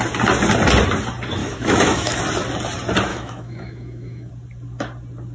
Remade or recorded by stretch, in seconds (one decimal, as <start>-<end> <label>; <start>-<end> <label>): 0.0-1.4 recorded; 1.4-2.2 remade; 2.2-3.1 recorded; 3.1-4.3 remade; 4.3-5.3 recorded